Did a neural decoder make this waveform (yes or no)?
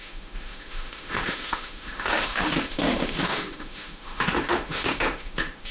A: yes